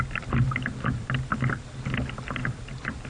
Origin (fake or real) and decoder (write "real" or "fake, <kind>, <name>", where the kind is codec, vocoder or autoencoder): real